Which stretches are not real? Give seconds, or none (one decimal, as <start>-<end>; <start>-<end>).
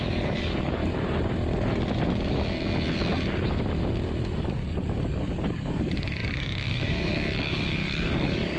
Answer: 0.0-0.8; 4.4-8.6